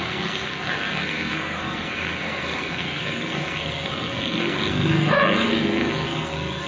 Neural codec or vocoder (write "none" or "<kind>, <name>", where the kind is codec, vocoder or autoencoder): codec, SNAC